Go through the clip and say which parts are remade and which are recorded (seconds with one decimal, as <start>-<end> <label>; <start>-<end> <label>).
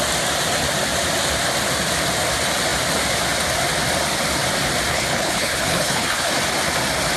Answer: 0.0-4.9 recorded; 4.9-6.3 remade; 6.3-7.2 recorded